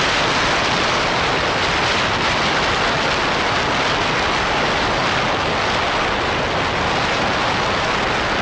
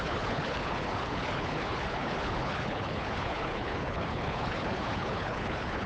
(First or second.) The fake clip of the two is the second